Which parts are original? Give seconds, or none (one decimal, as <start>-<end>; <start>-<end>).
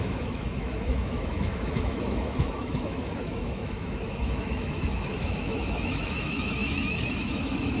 none